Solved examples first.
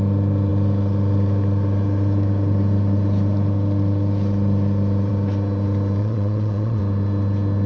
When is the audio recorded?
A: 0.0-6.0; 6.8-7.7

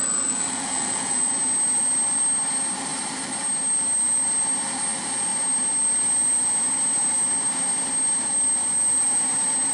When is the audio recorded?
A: 1.3-9.7

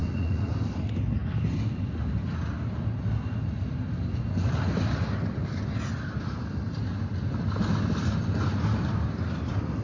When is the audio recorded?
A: 0.5-9.8